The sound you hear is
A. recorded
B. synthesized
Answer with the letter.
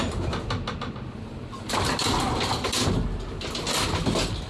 A